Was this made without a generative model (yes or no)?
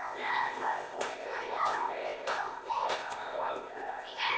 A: no